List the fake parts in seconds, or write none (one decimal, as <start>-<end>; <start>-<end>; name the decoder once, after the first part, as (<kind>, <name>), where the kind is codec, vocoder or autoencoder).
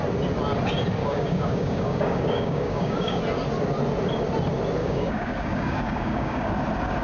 1.0-3.2 (codec, DAC); 4.8-6.5